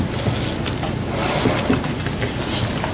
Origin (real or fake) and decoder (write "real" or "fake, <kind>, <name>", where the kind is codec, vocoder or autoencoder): real